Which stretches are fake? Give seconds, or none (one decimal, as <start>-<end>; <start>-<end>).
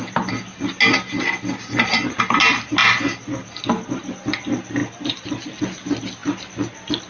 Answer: 4.8-5.6